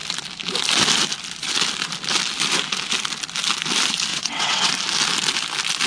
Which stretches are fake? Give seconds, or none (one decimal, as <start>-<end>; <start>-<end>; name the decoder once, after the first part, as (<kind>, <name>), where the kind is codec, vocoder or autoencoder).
4.1-4.7 (vocoder, WaveNeXt)